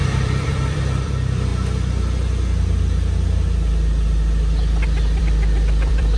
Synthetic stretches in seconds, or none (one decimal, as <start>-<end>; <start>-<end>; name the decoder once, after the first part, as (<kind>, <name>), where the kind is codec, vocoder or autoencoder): 0.0-1.5 (vocoder, BigVGAN v2); 5.2-6.2